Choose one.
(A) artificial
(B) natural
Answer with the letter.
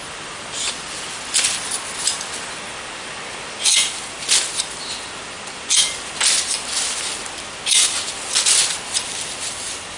B